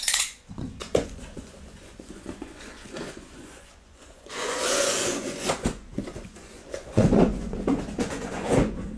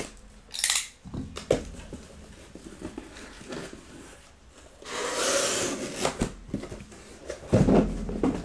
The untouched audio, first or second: second